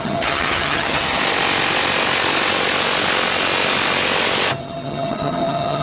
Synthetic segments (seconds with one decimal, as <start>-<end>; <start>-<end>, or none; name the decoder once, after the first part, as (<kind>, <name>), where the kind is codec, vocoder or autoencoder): 0.0-1.2 (vocoder, HiFi-GAN); 4.6-5.8